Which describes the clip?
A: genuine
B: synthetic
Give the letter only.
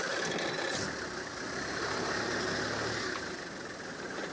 A